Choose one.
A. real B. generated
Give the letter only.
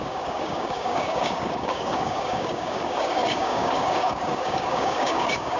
B